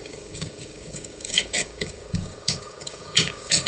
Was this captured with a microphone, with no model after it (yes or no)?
no